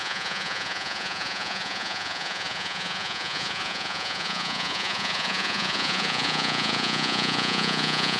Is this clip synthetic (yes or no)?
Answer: yes